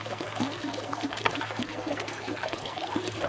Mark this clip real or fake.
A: fake